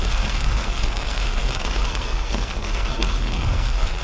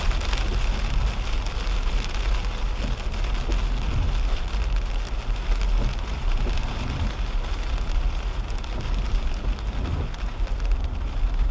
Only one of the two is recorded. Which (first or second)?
second